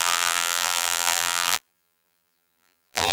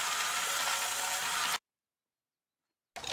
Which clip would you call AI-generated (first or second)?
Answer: first